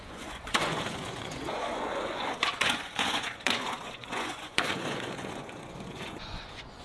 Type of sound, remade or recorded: remade